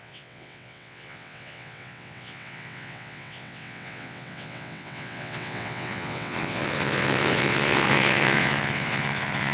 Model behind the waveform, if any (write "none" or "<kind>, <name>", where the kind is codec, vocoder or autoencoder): vocoder, WaveNeXt